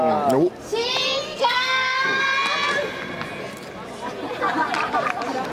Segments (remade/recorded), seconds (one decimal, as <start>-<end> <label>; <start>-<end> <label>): 0.0-1.3 recorded; 1.3-2.2 remade; 2.2-5.5 recorded